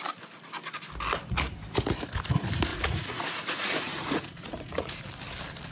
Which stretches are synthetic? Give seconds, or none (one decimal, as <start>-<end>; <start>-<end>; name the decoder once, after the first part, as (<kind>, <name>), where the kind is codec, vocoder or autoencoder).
2.7-5.0 (vocoder, Vocos)